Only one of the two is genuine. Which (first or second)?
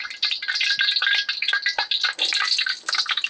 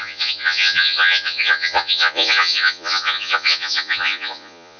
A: first